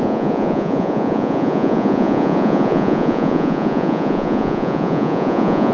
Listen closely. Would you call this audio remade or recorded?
remade